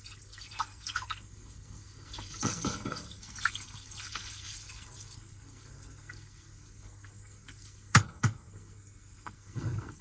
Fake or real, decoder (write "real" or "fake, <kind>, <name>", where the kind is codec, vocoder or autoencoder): fake, codec, SNAC